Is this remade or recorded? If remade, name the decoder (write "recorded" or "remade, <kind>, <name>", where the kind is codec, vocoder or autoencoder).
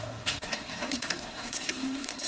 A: remade, codec, SNAC